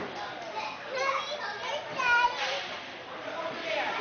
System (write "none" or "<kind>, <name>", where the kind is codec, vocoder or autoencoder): none